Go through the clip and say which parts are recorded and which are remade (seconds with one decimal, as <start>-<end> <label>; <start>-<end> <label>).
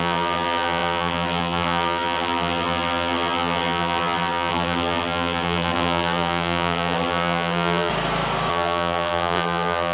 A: 0.0-7.9 remade; 7.9-8.5 recorded; 8.5-9.9 remade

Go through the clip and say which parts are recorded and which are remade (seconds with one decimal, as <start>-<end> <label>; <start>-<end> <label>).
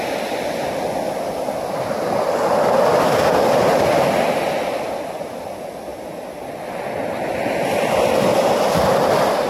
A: 0.0-9.5 recorded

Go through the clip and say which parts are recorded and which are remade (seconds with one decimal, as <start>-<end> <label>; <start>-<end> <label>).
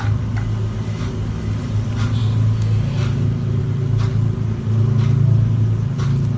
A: 0.0-6.4 recorded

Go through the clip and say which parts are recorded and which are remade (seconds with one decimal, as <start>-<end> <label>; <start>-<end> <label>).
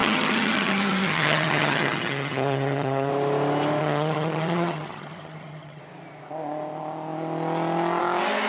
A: 0.0-3.1 remade; 3.1-3.8 recorded; 3.8-5.8 remade; 5.8-8.5 recorded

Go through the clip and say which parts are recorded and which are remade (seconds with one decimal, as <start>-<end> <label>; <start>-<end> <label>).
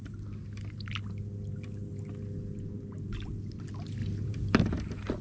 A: 0.0-4.0 recorded; 4.0-4.6 remade; 4.6-5.2 recorded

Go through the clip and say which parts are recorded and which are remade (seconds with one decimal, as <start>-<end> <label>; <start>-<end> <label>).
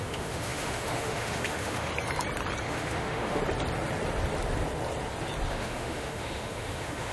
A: 0.0-1.9 remade; 1.9-2.6 recorded; 2.6-3.4 remade; 3.4-5.5 recorded; 5.5-7.1 remade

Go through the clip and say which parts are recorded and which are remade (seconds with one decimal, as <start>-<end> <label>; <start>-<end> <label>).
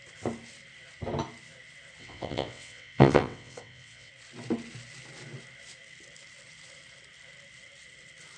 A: 0.0-2.0 recorded; 2.0-4.1 remade; 4.1-8.4 recorded